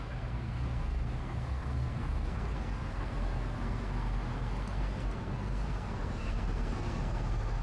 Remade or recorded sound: remade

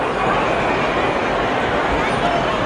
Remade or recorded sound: recorded